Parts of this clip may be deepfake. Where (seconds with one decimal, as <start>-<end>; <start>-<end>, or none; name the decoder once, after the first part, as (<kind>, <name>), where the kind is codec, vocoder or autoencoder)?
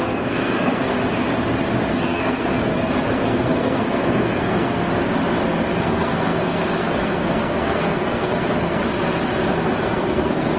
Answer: 0.0-1.0 (codec, SNAC); 1.9-4.8; 5.8-8.8; 9.5-10.6